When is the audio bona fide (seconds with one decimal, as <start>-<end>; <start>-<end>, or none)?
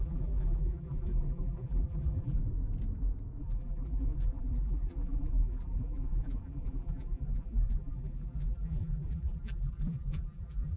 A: 2.4-3.4